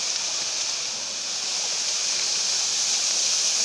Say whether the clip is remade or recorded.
recorded